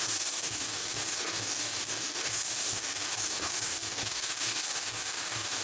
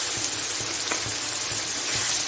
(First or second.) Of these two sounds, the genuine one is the second